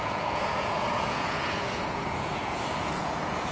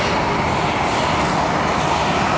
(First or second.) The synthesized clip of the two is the first